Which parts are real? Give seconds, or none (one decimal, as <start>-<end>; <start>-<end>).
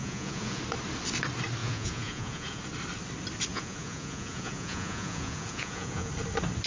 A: 0.6-1.6; 2.6-3.5; 6.1-6.7